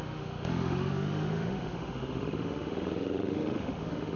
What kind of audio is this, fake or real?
fake